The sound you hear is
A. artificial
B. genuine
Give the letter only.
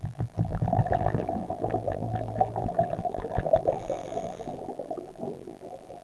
A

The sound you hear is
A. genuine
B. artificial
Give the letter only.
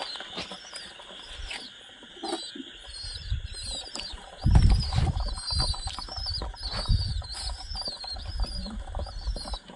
A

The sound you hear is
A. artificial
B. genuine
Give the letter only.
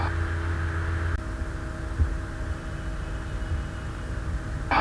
B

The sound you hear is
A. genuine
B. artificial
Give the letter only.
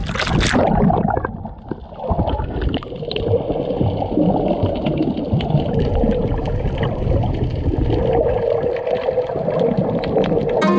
A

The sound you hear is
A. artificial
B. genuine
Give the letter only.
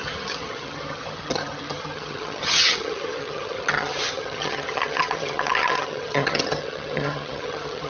A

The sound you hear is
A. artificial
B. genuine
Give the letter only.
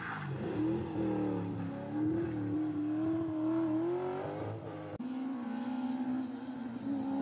B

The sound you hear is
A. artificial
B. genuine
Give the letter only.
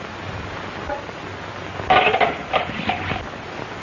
B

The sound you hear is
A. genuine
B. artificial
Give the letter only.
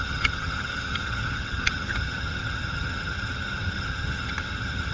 B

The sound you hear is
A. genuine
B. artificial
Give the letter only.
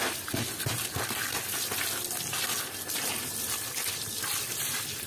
A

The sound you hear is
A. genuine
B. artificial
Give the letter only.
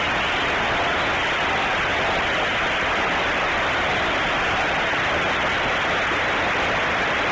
A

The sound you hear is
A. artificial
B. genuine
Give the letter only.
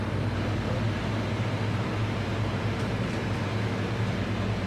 B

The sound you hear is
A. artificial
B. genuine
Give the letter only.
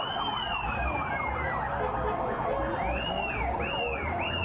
B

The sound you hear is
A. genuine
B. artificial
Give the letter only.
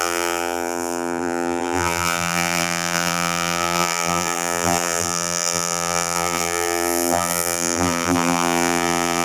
B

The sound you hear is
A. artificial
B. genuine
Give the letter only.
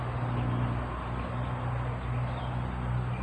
B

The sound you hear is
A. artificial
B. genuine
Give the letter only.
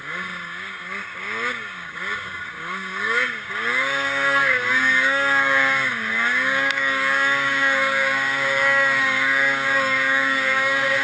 A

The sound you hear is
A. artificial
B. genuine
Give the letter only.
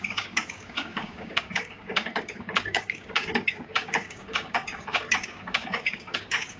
A